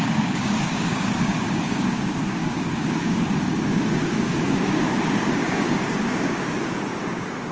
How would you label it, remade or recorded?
remade